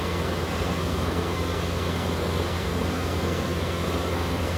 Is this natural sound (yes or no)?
no